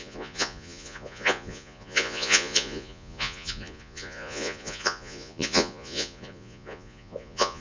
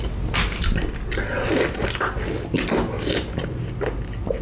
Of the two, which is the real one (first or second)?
second